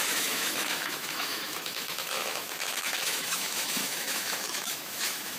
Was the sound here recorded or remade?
remade